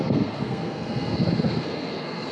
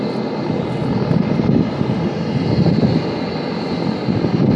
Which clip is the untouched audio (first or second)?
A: second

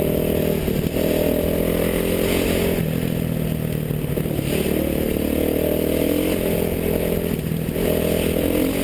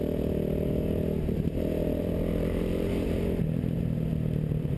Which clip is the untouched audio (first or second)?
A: first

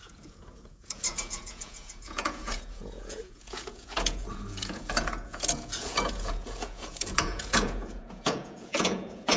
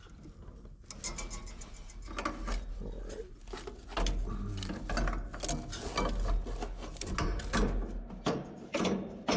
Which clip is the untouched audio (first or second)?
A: second